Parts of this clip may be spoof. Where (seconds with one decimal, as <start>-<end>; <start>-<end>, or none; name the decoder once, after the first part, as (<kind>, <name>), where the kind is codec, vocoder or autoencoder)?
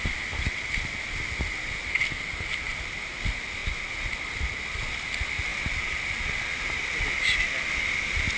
none